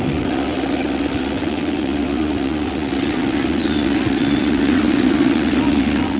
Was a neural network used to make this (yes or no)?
yes